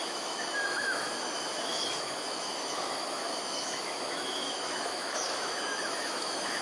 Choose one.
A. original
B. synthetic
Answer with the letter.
B